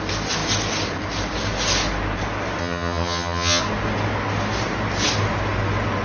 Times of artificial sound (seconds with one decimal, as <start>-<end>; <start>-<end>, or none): 2.6-3.6